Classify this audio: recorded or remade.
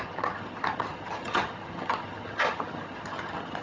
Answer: remade